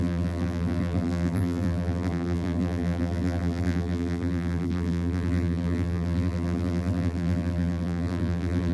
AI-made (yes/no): yes